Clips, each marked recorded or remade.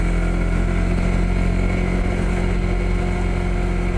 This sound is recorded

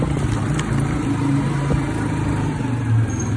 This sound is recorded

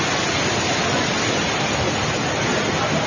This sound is recorded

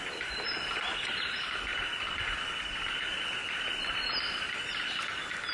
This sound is recorded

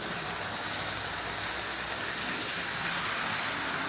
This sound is recorded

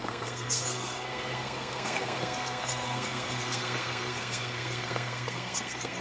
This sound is remade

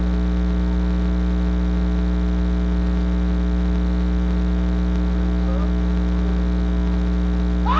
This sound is recorded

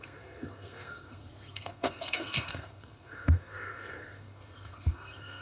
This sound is remade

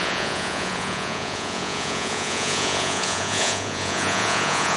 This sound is remade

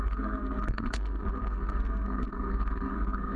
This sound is remade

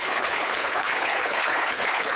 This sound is remade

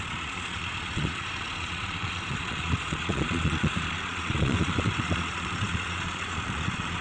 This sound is remade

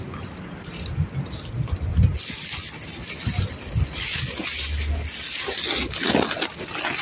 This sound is recorded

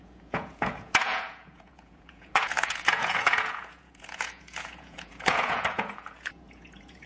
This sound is remade